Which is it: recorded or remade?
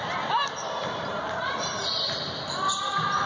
remade